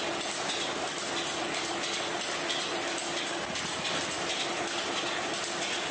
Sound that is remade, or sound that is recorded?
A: recorded